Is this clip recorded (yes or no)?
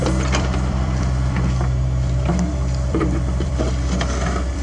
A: no